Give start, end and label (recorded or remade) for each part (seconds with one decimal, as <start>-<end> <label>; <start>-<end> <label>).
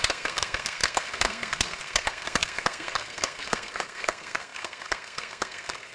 0.0-5.9 remade